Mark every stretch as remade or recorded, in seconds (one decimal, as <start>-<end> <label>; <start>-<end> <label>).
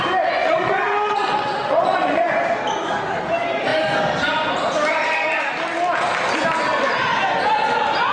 0.0-0.4 recorded; 0.4-2.3 remade; 2.3-8.1 recorded